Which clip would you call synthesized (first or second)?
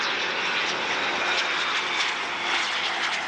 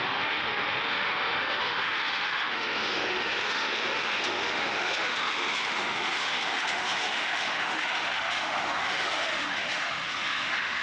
second